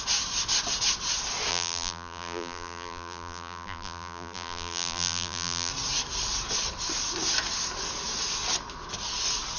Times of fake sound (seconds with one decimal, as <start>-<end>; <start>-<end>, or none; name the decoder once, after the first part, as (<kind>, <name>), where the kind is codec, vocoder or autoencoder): 1.5-5.7 (vocoder, BigVGAN v2)